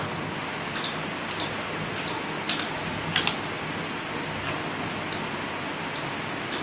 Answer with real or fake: real